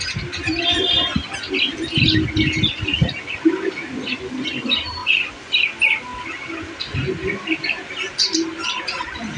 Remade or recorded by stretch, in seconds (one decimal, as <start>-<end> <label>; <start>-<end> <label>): 0.0-5.0 recorded; 5.0-5.5 remade; 5.5-9.4 recorded